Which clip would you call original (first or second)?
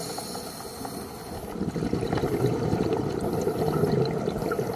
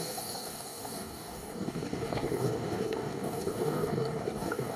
first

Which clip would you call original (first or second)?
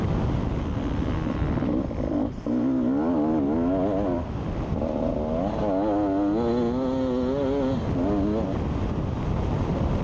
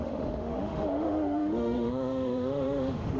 first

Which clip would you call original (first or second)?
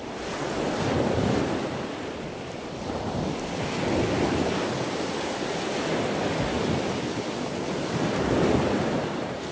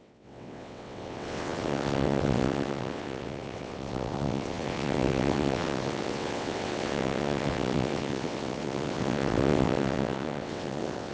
first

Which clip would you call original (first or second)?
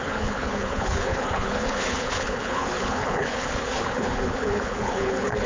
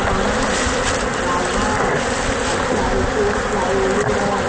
second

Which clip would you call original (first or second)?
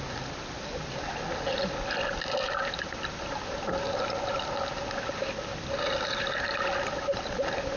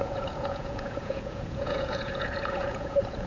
first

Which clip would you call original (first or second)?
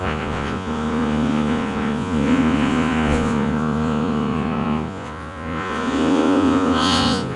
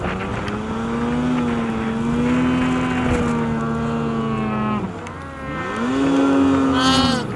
second